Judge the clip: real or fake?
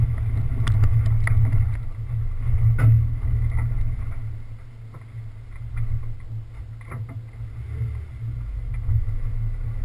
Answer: real